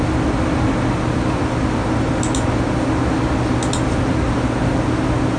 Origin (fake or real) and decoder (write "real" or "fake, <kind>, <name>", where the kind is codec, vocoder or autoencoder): real